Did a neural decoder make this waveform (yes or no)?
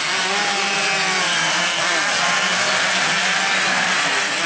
no